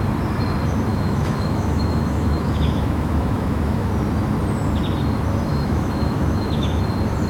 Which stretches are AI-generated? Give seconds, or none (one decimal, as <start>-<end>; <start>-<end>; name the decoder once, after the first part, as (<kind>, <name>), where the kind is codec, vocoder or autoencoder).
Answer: 0.9-3.9 (autoencoder, DAC-VAE); 5.5-6.8